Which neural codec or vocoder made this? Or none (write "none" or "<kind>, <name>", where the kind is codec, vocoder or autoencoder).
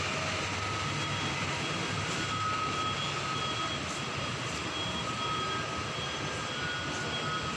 none